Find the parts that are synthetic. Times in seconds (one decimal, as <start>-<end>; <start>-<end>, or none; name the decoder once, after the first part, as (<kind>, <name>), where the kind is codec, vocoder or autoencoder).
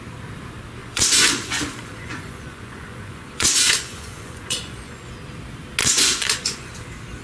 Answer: 0.8-5.1 (vocoder, Vocos); 5.8-6.7